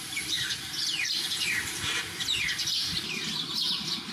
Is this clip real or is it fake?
fake